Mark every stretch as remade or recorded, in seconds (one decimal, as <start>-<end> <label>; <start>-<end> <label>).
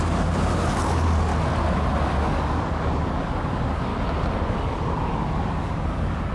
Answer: 0.0-1.3 remade; 1.3-2.2 recorded; 2.2-3.9 remade; 3.9-4.5 recorded; 4.5-6.3 remade